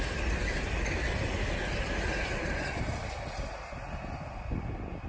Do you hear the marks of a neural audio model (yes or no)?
no